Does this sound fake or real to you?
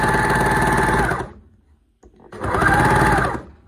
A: real